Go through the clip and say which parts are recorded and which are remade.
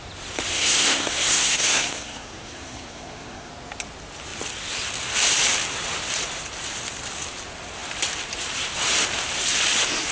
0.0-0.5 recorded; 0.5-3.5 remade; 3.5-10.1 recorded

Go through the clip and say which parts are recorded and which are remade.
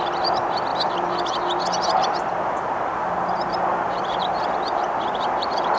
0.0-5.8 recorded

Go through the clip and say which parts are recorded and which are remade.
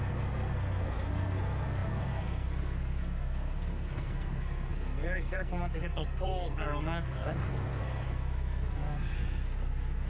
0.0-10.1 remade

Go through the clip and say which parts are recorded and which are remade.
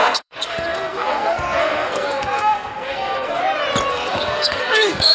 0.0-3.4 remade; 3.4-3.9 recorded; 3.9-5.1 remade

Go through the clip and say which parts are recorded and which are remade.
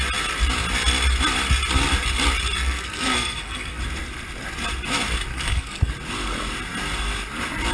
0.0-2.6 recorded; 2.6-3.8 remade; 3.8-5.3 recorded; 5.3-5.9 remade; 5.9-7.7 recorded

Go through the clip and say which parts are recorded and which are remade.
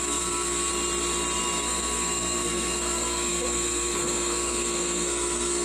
0.0-0.7 remade; 0.7-1.4 recorded; 1.4-5.6 remade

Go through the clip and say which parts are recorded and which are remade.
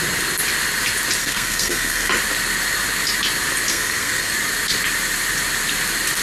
0.0-1.2 recorded; 1.2-2.1 remade; 2.1-3.7 recorded; 3.7-4.3 remade; 4.3-6.2 recorded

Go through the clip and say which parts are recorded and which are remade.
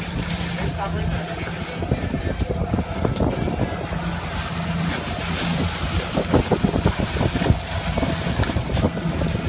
0.0-9.5 recorded